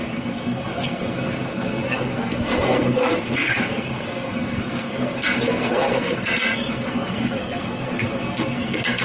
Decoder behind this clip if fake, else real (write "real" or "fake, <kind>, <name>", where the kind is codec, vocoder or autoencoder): fake, codec, SNAC